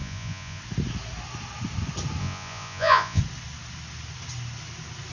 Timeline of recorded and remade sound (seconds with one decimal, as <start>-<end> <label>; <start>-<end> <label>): 0.0-0.6 remade; 0.6-2.2 recorded; 2.2-3.2 remade; 3.2-5.1 recorded